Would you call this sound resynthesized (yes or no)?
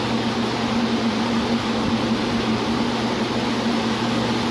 no